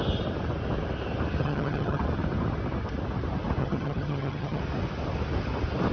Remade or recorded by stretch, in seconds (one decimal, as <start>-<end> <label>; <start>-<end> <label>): 0.0-1.4 recorded; 1.4-2.0 remade; 2.0-3.6 recorded; 3.6-4.6 remade; 4.6-5.9 recorded

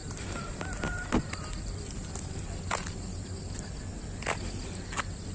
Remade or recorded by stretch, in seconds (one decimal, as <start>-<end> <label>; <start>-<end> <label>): 0.0-5.3 recorded

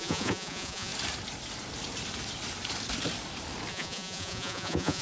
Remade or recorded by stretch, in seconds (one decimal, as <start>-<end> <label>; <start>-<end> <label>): 0.0-0.9 remade; 0.9-3.7 recorded; 3.7-5.0 remade

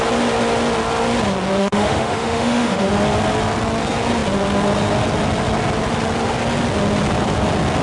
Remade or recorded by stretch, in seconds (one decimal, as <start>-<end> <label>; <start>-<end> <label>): 0.0-1.6 recorded; 1.6-2.9 remade; 2.9-7.8 recorded

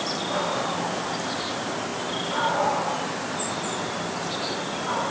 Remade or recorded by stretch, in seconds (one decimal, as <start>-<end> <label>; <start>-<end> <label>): 0.0-5.1 recorded